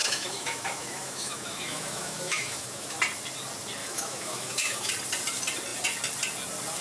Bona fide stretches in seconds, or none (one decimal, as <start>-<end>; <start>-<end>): 3.0-3.8; 4.9-6.8